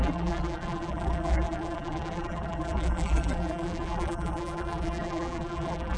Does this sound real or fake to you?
fake